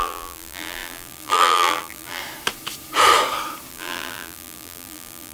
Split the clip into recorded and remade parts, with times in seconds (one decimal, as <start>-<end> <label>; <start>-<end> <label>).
0.0-2.2 remade; 2.2-3.7 recorded; 3.7-5.3 remade